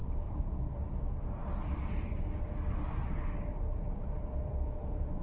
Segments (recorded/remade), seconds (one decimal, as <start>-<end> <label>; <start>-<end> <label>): 0.0-5.2 recorded